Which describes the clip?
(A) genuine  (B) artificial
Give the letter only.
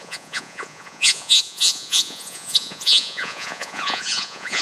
B